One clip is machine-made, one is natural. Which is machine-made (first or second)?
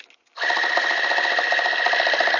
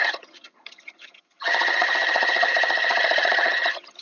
second